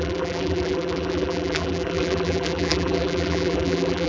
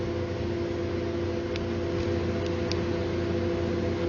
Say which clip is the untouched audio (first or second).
second